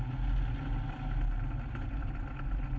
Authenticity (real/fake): real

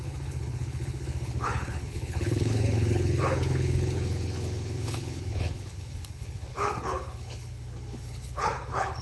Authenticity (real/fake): fake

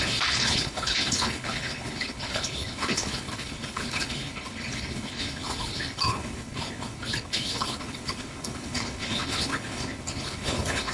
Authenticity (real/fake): fake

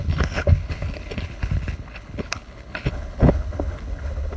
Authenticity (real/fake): fake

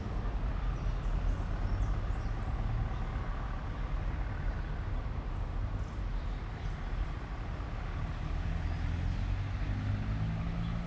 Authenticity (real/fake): real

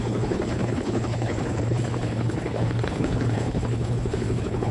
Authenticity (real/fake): fake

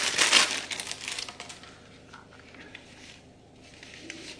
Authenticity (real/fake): real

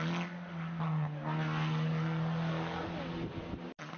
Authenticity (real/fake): real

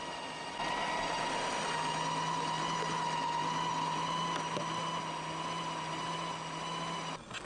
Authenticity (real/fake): real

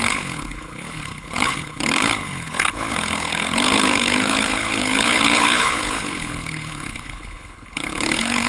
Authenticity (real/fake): fake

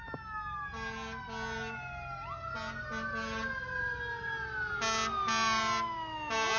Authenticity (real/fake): real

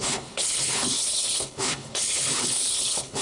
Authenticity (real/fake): fake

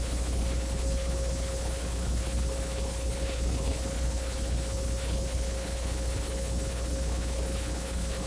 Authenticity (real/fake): fake